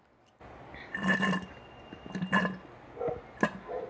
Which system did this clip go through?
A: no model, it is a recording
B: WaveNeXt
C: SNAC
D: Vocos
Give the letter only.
A